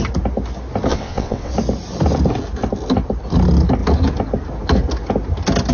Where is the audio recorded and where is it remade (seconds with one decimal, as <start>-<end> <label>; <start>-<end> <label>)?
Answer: 0.0-0.9 recorded; 0.9-1.5 remade; 1.5-5.7 recorded

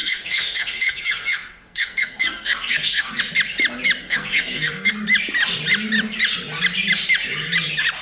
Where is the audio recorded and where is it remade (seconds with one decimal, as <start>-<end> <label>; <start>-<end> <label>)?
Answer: 0.0-3.2 remade; 3.2-4.0 recorded; 4.0-4.9 remade; 4.9-8.0 recorded

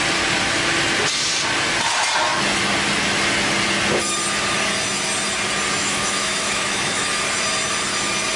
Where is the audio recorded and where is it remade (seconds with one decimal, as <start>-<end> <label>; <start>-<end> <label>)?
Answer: 0.0-5.8 recorded; 5.8-7.1 remade; 7.1-8.4 recorded

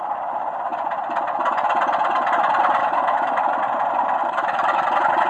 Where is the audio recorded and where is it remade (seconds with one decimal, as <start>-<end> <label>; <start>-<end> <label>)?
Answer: 0.0-2.8 recorded; 2.8-3.4 remade; 3.4-4.2 recorded; 4.2-4.8 remade; 4.8-5.3 recorded

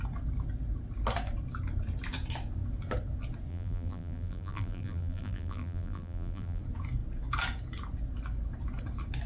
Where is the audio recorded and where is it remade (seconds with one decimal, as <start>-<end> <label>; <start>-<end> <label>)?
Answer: 0.0-3.5 recorded; 3.5-6.6 remade; 6.6-9.3 recorded